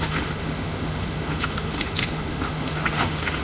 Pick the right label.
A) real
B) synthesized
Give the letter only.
B